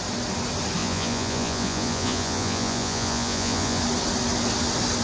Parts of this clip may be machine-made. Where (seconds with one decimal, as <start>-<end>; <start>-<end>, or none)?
0.8-3.8